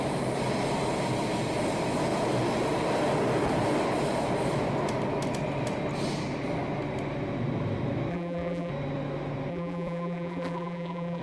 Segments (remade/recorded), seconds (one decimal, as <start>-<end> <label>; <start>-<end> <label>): 0.0-8.1 recorded; 8.1-8.7 remade; 8.7-9.5 recorded; 9.5-11.2 remade